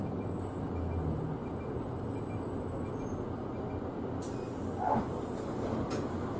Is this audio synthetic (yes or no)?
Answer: no